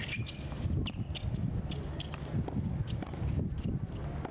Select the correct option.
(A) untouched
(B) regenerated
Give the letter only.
A